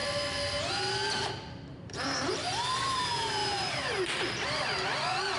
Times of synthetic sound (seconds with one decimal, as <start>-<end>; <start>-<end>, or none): 1.7-2.3; 3.4-4.2